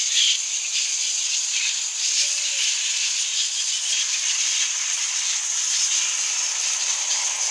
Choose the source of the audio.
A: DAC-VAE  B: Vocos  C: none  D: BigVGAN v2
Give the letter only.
D